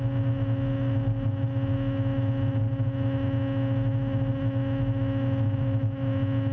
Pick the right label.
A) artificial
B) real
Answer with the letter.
B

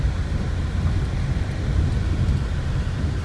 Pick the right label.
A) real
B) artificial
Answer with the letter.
A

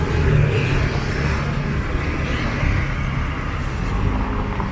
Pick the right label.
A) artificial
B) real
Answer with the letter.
B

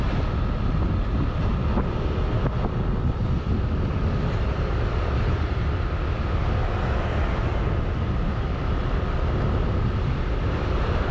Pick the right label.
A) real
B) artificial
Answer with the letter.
A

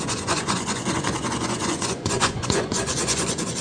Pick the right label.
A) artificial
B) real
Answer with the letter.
A